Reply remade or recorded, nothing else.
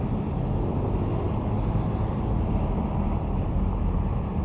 recorded